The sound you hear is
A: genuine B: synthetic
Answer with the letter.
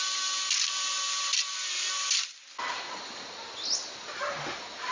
A